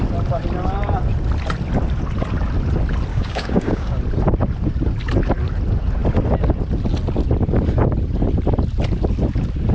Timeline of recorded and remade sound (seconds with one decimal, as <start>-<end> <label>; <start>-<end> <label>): 0.0-3.1 recorded; 3.1-4.0 remade; 4.0-9.7 recorded